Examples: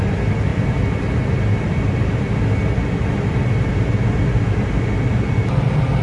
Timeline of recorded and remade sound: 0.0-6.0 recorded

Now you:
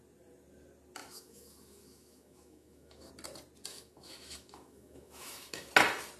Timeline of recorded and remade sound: 0.0-1.0 recorded; 1.0-3.1 remade; 3.1-3.7 recorded; 3.7-5.7 remade; 5.7-6.2 recorded